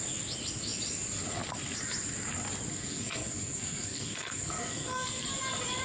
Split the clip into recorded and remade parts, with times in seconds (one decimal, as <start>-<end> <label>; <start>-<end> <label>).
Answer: 0.0-2.7 recorded; 2.7-5.3 remade; 5.3-5.8 recorded